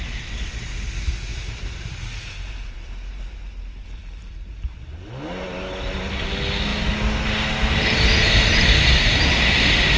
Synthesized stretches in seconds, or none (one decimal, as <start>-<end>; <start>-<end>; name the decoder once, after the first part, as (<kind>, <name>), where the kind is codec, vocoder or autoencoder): 1.3-3.2 (vocoder, BigVGAN v2); 4.0-4.9

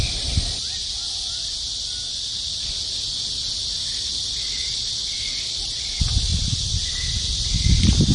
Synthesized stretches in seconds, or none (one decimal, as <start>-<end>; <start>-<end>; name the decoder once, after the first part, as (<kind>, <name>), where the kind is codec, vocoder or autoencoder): none

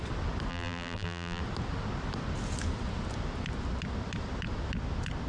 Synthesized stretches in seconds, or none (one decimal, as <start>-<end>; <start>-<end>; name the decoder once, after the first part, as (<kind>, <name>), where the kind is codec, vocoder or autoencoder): 0.5-1.4 (vocoder, BigVGAN v2)

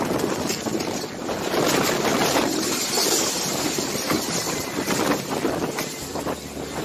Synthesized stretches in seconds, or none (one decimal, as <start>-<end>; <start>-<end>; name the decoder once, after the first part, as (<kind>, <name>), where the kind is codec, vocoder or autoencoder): 2.1-6.2 (vocoder, BigVGAN v2)

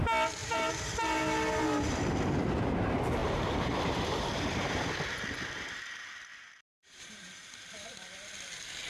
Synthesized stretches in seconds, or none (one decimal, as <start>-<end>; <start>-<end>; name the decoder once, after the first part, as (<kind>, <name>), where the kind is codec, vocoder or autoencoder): 0.4-2.1 (vocoder, BigVGAN v2); 3.2-4.9; 6.3-8.3